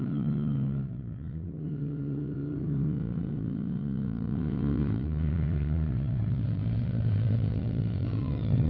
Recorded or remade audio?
remade